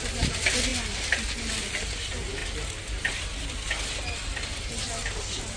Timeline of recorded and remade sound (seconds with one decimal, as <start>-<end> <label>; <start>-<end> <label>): 0.0-5.6 recorded